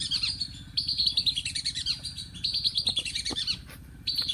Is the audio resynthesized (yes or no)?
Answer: no